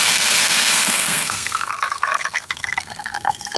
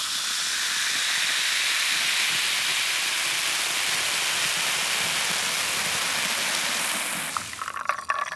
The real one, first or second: second